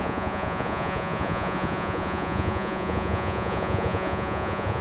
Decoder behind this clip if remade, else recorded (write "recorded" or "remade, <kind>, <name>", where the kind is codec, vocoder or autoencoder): remade, vocoder, Vocos